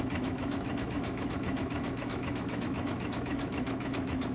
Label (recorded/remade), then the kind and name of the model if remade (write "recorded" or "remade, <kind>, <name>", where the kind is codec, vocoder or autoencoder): remade, autoencoder, DAC-VAE